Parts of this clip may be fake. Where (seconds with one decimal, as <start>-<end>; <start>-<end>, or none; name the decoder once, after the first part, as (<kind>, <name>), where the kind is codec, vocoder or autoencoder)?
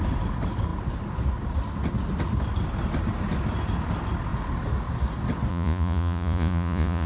5.5-7.1 (vocoder, Vocos)